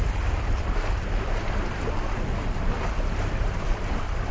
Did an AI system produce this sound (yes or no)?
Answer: no